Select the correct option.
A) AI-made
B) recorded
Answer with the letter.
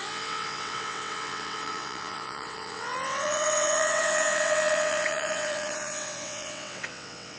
A